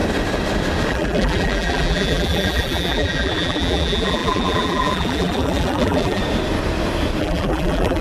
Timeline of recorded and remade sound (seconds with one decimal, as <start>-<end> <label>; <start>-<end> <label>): 0.0-0.9 recorded; 0.9-6.2 remade; 6.2-7.2 recorded; 7.2-8.0 remade